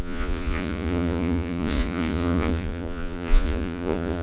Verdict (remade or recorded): remade